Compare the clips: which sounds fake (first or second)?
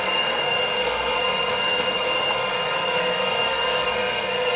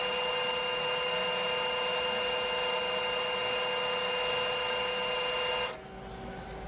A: first